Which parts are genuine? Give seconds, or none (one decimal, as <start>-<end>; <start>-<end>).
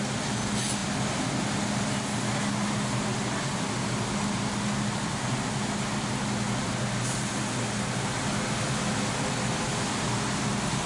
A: 0.0-10.9